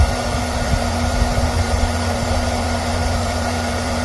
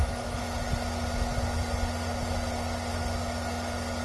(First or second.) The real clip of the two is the second